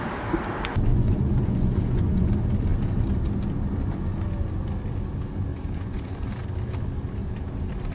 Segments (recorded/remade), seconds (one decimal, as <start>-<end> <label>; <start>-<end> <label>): 0.0-0.9 recorded; 0.9-2.3 remade; 2.3-5.5 recorded; 5.5-6.3 remade; 6.3-7.9 recorded